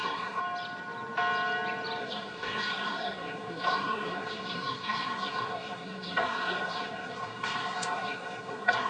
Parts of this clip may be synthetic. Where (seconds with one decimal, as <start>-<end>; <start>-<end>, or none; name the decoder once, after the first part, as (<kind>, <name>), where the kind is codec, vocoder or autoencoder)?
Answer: 0.0-0.4 (codec, SNAC); 2.0-8.9